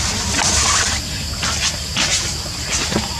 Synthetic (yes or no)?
no